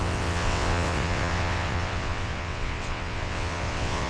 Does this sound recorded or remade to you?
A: remade